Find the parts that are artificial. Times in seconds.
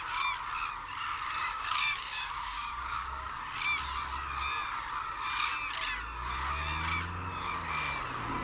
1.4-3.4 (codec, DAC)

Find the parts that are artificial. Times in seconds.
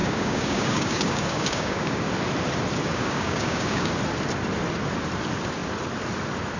0.0-2.1 (codec, DAC); 2.8-3.9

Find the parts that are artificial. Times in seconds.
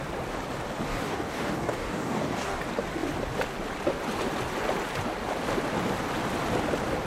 0.9-2.6 (codec, DAC)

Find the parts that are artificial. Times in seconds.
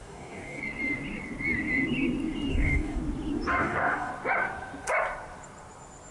0.0-0.6 (codec, DAC); 2.5-3.0; 3.5-4.1